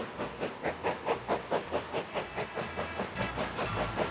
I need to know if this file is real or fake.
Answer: real